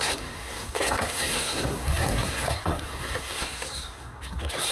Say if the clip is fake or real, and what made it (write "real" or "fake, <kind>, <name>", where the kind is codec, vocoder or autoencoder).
fake, codec, SNAC